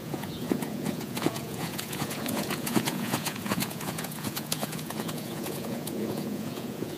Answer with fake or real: fake